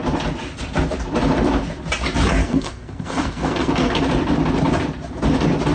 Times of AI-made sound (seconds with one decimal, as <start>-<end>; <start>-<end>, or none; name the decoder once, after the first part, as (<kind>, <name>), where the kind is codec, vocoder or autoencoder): 2.4-4.0 (codec, SNAC)